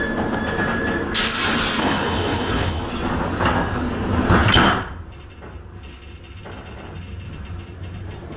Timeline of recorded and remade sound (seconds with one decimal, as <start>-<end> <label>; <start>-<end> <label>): 0.0-1.8 recorded; 1.8-2.9 remade; 2.9-8.4 recorded